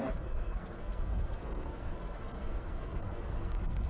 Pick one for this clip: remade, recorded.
remade